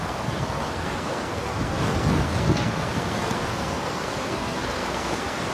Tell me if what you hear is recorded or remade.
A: remade